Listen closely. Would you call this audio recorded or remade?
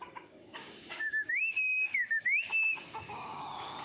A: remade